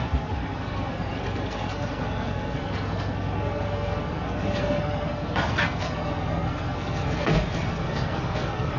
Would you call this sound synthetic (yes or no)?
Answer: yes